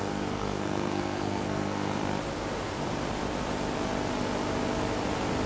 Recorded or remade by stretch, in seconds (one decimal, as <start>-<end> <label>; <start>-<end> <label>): 0.0-2.0 remade; 2.0-5.5 recorded